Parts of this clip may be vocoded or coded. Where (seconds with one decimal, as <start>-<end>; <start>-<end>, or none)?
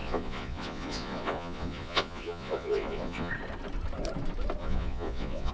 0.0-3.3; 4.6-5.5